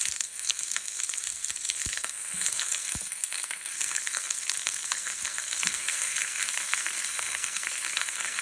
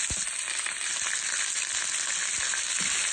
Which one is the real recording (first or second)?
second